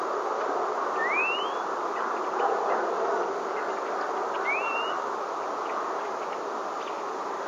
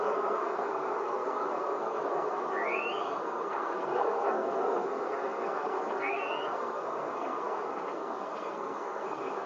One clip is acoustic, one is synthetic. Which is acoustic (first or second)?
first